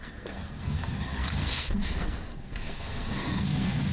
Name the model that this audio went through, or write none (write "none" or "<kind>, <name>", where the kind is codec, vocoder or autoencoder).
codec, SNAC